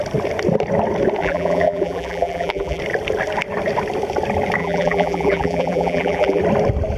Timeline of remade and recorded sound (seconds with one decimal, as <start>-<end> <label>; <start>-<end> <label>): 0.0-1.2 recorded; 1.2-2.8 remade; 2.8-4.6 recorded; 4.6-6.4 remade; 6.4-7.0 recorded